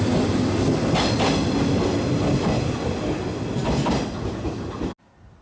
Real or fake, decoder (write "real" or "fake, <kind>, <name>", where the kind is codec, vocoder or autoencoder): real